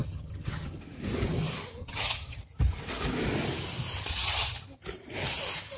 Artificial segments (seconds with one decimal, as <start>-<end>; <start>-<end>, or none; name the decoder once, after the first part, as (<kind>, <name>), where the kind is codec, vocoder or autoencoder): 0.0-0.8 (vocoder, HiFi-GAN); 1.8-2.4; 4.1-4.6